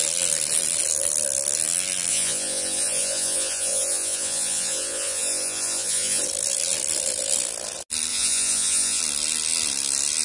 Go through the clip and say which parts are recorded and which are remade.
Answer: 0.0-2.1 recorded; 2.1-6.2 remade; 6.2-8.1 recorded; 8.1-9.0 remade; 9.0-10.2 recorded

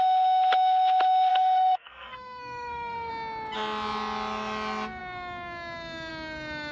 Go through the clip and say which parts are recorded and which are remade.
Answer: 0.0-1.3 recorded; 1.3-3.1 remade; 3.1-6.7 recorded

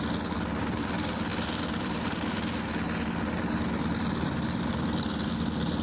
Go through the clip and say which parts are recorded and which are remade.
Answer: 0.0-1.3 recorded; 1.3-4.8 remade; 4.8-5.8 recorded

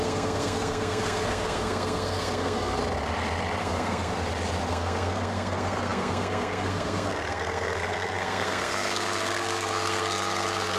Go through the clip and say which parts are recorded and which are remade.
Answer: 0.0-2.8 remade; 2.8-3.6 recorded; 3.6-4.1 remade; 4.1-4.7 recorded; 4.7-10.8 remade

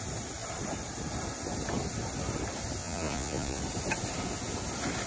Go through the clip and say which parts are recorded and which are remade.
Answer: 0.0-2.8 recorded; 2.8-3.6 remade; 3.6-5.1 recorded

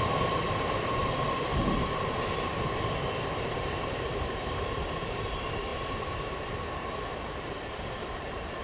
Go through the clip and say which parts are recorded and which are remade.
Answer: 0.0-1.0 remade; 1.0-3.5 recorded; 3.5-8.6 remade

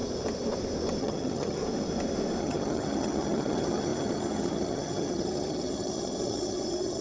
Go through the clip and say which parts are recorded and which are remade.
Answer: 0.0-1.0 recorded; 1.0-1.6 remade; 1.6-2.4 recorded; 2.4-7.0 remade

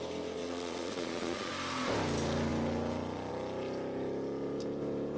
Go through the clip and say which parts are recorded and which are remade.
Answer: 0.0-0.4 recorded; 0.4-1.5 remade; 1.5-5.2 recorded